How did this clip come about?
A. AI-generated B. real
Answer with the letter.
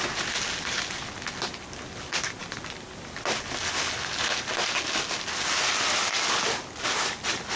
B